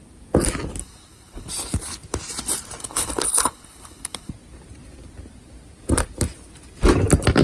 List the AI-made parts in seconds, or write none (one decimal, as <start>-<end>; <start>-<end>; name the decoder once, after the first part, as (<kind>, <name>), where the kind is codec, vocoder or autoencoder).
0.8-1.5 (codec, HILCodec); 2.8-4.3